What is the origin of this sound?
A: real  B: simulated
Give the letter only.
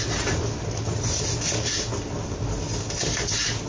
A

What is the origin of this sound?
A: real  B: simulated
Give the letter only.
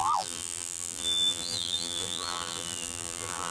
B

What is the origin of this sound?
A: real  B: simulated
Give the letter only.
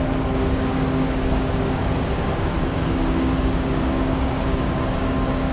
B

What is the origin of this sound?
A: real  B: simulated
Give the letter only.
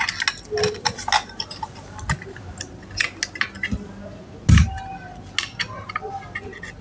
A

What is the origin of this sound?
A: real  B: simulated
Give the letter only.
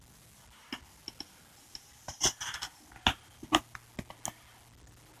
A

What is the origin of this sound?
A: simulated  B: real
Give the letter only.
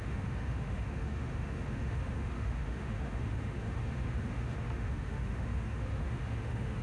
A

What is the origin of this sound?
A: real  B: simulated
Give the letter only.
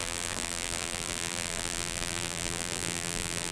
B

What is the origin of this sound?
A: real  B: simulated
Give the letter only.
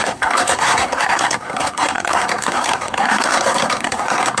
B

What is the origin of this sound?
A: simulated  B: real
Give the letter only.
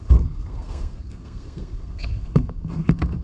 A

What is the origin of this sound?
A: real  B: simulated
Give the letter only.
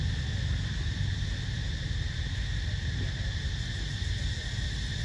A